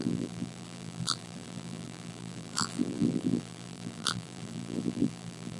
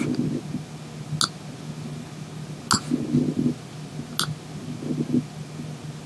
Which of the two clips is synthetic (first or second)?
first